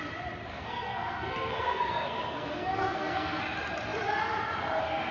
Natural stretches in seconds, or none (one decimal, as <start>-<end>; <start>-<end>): 0.0-0.5; 3.4-5.1